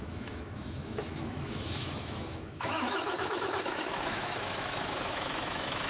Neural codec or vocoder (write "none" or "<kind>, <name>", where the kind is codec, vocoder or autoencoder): autoencoder, DAC-VAE